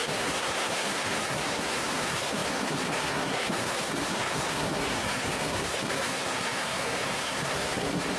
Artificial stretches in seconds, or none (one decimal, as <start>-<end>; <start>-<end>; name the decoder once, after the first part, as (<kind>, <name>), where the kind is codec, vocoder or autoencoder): 0.0-8.2 (codec, SNAC)